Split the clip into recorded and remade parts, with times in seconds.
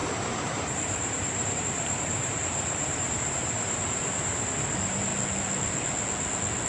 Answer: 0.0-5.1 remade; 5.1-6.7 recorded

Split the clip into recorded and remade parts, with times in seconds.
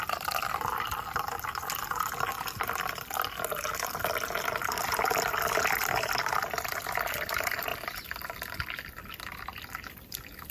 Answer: 0.0-7.7 remade; 7.7-9.9 recorded; 9.9-10.5 remade